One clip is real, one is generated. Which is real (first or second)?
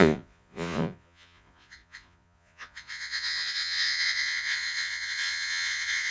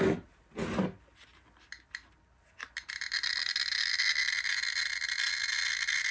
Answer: second